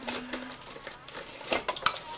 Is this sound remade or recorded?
recorded